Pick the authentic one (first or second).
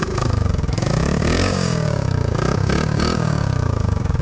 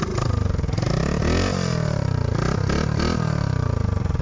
second